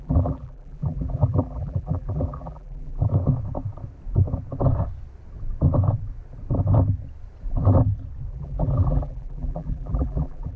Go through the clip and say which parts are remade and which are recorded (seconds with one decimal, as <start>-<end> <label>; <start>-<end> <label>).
0.0-3.1 remade; 3.1-8.3 recorded; 8.3-10.6 remade